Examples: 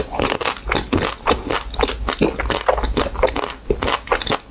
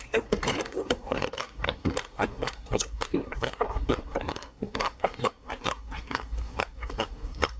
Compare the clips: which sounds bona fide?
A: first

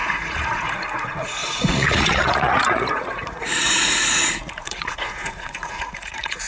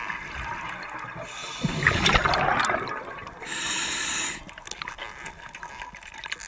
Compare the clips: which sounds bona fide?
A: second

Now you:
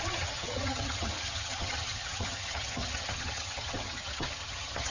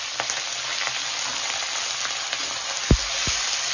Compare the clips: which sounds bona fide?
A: second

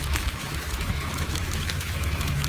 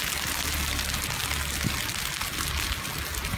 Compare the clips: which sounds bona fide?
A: second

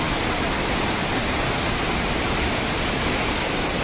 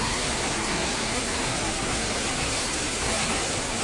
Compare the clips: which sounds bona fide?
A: first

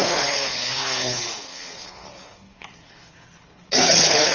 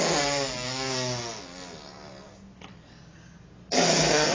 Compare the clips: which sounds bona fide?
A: second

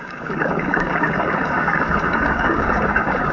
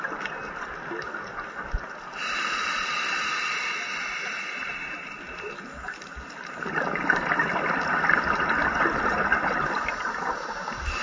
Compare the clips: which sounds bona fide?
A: second